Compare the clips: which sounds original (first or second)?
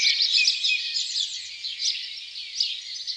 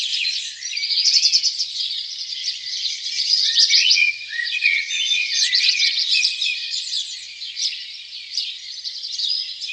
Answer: first